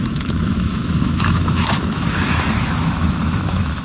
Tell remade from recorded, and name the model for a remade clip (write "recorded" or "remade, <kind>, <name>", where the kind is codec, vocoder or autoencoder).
remade, autoencoder, DAC-VAE